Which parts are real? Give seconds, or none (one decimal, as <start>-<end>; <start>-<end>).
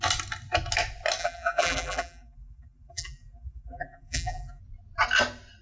0.0-1.2; 4.6-5.6